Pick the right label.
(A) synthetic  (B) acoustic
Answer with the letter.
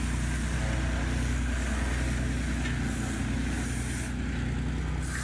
B